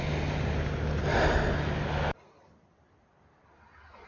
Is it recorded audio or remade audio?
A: recorded